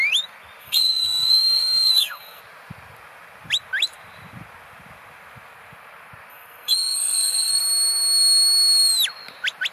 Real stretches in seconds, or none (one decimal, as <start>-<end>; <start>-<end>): 0.0-0.6; 2.4-6.3; 7.6-9.7